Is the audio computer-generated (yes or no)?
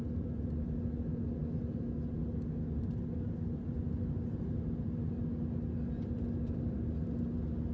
no